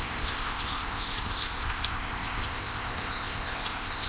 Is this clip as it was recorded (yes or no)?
no